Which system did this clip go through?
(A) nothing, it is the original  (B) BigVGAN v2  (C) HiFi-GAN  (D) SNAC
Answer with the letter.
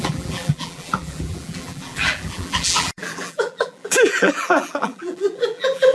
B